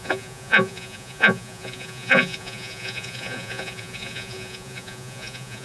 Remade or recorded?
remade